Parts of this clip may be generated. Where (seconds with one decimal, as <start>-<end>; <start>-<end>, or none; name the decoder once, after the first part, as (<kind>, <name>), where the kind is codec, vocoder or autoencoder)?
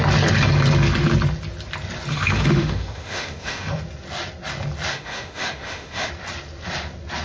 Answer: 2.1-3.8 (autoencoder, DAC-VAE); 4.9-6.1